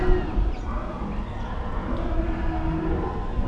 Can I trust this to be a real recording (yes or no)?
yes